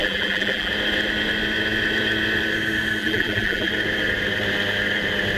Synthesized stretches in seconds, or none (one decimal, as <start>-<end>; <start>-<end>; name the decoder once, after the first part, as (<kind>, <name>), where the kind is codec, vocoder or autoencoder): 0.0-0.7 (vocoder, BigVGAN v2); 3.0-3.7